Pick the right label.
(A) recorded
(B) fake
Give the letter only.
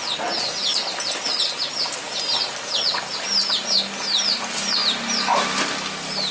A